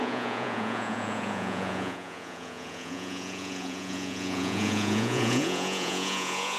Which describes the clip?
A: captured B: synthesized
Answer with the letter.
B